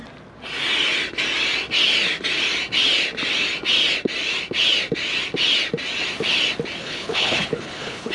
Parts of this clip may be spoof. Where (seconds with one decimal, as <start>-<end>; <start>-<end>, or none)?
6.8-8.1